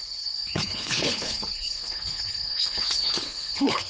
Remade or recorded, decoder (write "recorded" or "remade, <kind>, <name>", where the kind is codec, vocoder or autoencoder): remade, codec, HILCodec